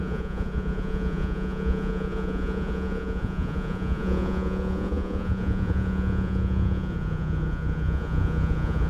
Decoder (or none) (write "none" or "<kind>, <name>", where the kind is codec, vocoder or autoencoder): vocoder, Vocos